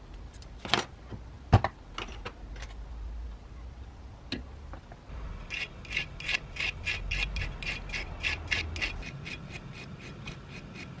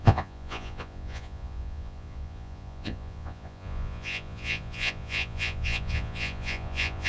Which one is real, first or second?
first